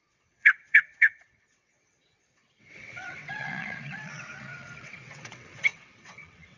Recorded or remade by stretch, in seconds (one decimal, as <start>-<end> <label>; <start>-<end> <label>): 0.0-6.6 remade